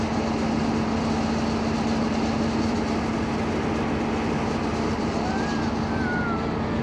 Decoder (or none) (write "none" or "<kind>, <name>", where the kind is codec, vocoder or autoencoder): none